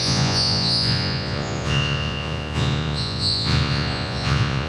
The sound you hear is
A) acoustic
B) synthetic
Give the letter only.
B